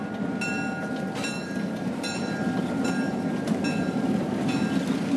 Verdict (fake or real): real